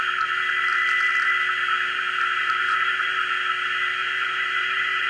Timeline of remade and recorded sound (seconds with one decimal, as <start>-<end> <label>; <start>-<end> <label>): 0.0-2.4 recorded; 2.4-3.2 remade; 3.2-4.0 recorded; 4.0-5.1 remade